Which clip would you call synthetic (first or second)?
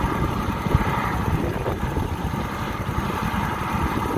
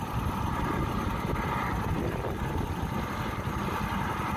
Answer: first